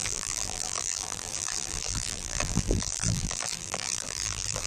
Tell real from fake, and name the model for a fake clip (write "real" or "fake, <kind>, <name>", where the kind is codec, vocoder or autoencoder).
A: fake, vocoder, BigVGAN v2